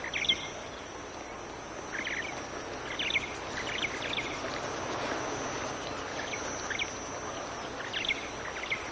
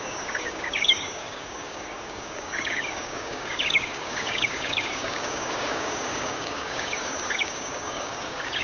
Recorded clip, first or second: first